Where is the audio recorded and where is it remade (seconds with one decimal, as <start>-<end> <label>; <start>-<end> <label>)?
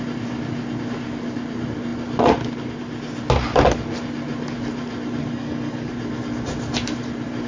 0.0-5.2 recorded; 5.2-5.9 remade; 5.9-7.5 recorded